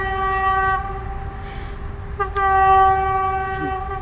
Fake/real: real